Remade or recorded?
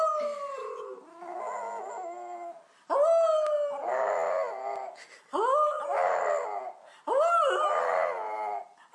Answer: recorded